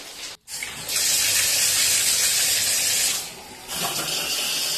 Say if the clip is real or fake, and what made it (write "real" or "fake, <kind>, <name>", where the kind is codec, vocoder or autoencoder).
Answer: real